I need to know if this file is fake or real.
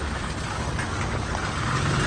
real